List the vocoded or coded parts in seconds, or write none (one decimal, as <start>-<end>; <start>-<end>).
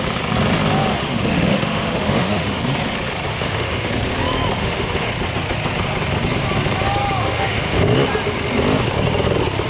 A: 0.9-2.6; 3.3-3.9; 4.6-5.1; 7.2-7.8